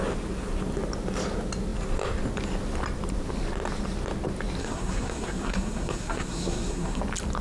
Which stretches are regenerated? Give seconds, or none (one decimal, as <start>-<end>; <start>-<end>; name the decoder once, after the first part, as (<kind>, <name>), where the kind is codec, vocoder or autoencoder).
4.6-7.0 (codec, SNAC)